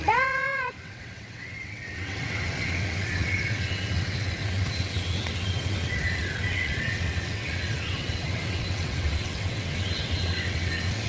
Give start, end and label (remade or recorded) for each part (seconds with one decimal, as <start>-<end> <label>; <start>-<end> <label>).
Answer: 0.0-11.1 remade